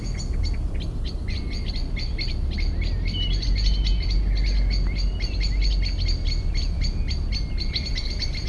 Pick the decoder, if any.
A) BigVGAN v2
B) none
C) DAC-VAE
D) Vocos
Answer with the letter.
B